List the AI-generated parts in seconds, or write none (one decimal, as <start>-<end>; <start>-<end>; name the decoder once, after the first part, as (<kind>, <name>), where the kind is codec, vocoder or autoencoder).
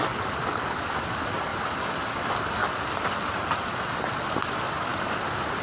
none